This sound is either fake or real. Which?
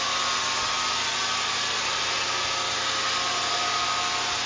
real